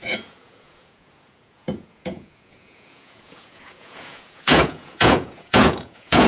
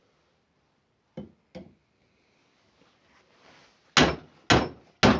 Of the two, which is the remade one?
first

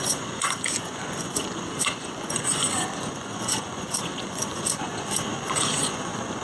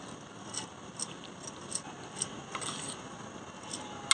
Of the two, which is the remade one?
first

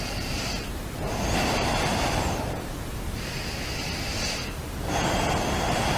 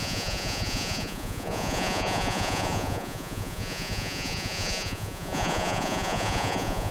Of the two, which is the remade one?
second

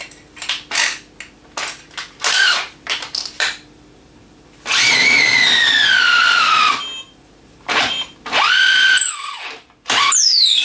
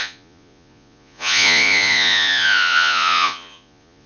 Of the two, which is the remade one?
second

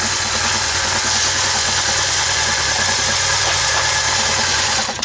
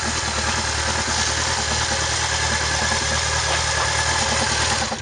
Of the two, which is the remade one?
first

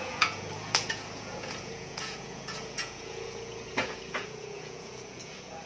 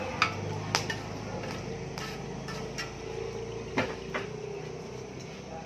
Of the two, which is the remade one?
first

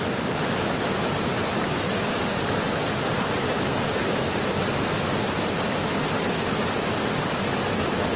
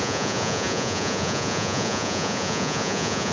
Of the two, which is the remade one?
second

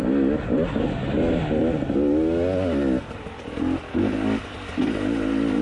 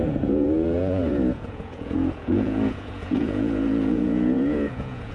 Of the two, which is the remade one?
second